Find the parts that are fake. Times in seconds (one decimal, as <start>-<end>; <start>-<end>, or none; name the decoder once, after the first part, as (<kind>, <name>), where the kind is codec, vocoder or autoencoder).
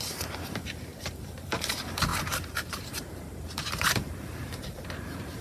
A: 0.0-5.4 (vocoder, BigVGAN v2)